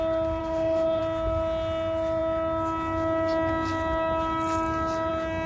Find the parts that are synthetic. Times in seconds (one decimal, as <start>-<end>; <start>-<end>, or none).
0.4-1.0